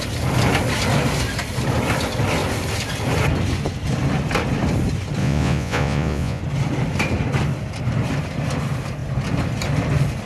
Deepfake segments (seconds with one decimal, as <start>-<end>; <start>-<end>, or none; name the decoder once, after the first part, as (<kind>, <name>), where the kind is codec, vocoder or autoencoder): 5.2-6.4 (vocoder, Vocos)